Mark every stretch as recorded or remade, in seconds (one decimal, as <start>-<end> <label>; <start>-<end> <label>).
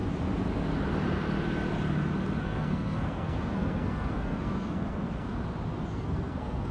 0.0-2.4 recorded; 2.4-5.3 remade; 5.3-5.9 recorded; 5.9-6.7 remade